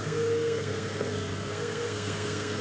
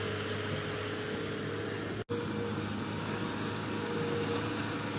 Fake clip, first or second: first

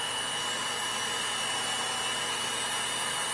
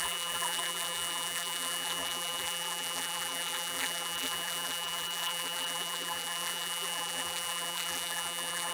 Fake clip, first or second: second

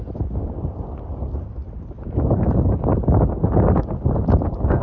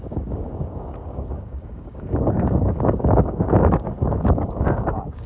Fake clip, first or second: second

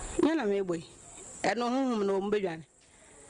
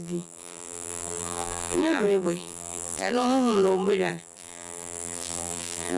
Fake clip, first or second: second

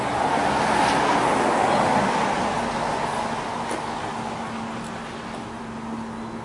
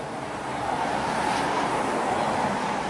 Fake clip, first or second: second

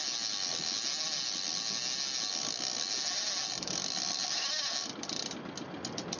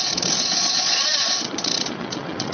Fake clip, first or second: second